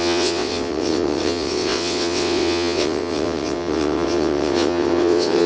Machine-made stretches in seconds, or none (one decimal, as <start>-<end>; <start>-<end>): 0.0-5.5